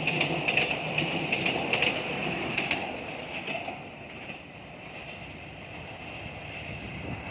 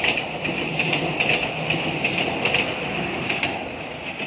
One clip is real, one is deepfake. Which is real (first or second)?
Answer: second